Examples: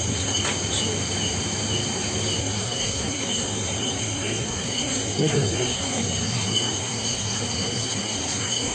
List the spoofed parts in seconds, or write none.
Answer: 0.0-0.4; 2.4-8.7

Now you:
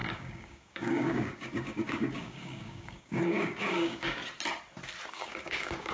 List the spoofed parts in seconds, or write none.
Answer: 0.0-4.2; 5.1-5.9